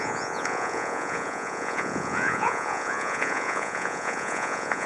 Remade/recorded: remade